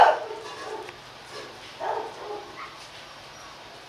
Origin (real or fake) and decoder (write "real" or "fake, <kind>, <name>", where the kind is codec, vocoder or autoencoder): real